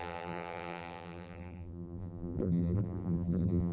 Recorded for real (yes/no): no